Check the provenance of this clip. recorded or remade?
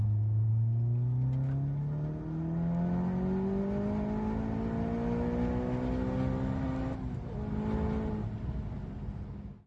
recorded